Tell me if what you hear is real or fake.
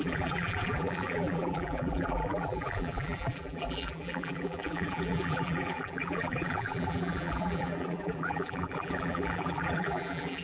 fake